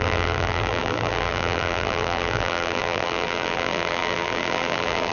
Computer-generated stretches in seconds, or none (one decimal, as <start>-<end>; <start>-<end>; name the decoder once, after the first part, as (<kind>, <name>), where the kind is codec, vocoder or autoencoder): 0.0-5.1 (vocoder, BigVGAN v2)